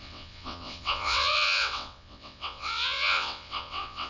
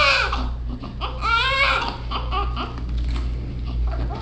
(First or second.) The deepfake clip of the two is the first